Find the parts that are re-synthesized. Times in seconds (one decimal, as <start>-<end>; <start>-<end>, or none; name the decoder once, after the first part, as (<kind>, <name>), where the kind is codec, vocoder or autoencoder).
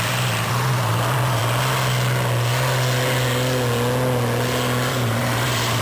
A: 0.0-1.4 (vocoder, BigVGAN v2); 4.9-5.8